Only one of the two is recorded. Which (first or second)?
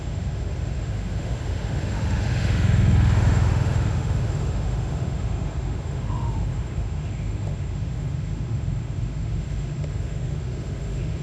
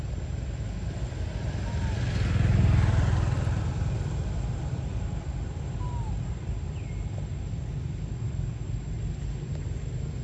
second